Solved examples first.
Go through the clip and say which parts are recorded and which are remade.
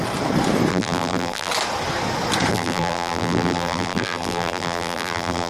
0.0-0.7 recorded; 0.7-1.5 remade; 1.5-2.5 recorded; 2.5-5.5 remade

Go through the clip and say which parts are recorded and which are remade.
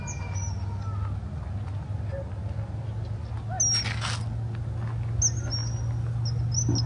0.0-6.9 recorded